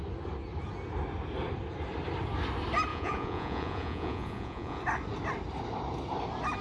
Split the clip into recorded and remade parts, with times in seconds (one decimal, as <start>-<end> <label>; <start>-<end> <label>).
0.0-2.9 recorded; 2.9-4.8 remade; 4.8-6.6 recorded